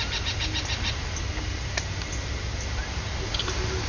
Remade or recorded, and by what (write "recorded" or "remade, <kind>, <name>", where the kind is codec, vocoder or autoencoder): recorded